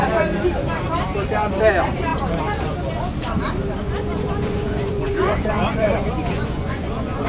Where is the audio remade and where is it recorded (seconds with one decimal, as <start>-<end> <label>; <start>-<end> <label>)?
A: 0.0-3.8 recorded; 3.8-7.3 remade